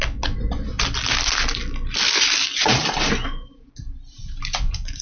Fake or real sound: real